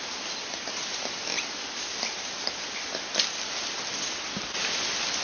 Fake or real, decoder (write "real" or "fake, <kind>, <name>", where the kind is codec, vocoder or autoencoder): real